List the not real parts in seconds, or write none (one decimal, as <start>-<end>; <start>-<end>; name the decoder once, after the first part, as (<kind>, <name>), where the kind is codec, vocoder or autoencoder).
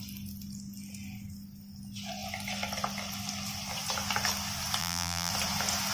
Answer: 4.8-5.3 (vocoder, BigVGAN v2)